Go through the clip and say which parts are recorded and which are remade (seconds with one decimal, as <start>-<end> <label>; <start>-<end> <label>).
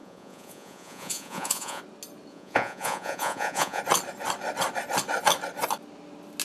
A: 0.0-1.8 remade; 1.8-2.3 recorded; 2.3-3.8 remade; 3.8-6.4 recorded